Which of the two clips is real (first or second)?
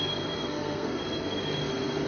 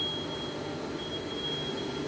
second